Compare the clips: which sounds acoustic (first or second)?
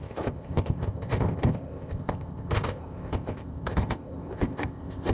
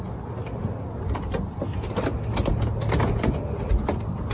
second